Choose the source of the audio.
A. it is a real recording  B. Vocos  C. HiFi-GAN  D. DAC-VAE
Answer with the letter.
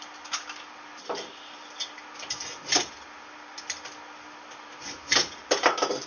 A